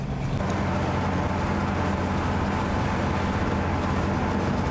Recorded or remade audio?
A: recorded